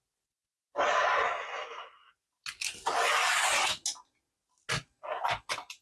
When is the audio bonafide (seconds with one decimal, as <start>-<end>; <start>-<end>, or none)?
0.0-5.8